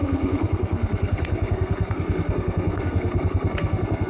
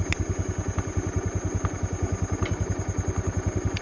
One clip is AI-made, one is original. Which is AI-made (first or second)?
first